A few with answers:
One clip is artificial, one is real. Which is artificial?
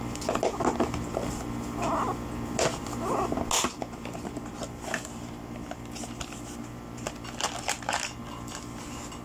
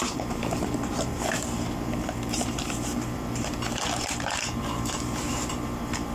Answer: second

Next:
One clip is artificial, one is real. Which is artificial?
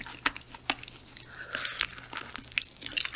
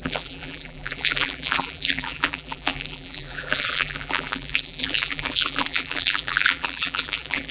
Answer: second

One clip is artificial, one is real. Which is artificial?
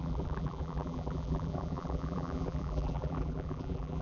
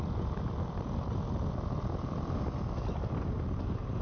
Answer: first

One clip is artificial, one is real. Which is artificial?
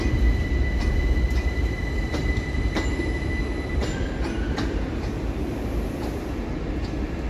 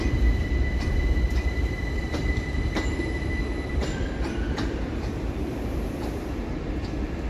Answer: second